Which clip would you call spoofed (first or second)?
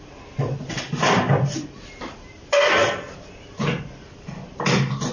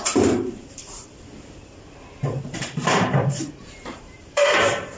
second